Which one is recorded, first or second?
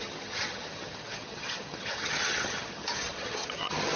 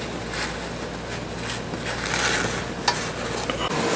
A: second